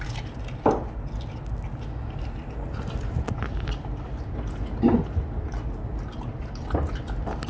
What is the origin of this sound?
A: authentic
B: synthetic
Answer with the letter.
A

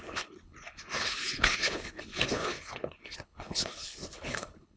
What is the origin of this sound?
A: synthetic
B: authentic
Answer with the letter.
A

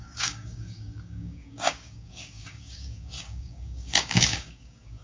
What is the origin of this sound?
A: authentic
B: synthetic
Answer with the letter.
B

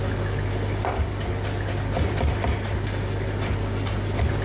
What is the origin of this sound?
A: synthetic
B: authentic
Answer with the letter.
B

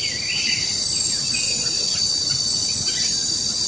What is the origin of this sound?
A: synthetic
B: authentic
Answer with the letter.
B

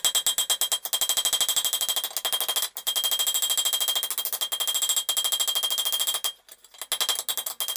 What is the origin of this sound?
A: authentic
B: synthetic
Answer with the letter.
A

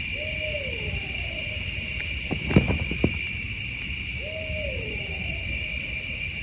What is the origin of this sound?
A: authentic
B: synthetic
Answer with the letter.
A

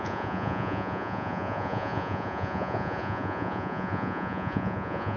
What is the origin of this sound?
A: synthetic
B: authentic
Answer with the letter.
A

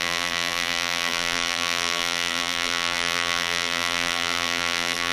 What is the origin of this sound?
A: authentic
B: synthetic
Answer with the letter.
B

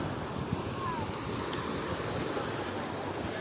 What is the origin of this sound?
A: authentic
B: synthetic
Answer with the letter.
A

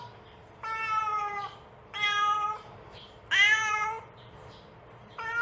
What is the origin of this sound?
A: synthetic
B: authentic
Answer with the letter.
A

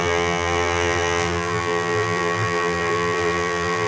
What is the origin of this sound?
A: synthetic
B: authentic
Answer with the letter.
A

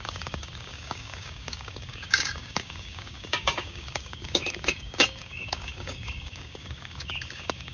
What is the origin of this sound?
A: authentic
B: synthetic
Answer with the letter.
B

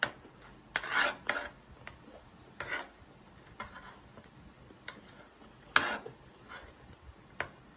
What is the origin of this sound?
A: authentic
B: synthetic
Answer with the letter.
A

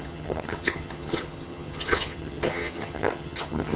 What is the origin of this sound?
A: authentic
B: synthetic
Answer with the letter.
B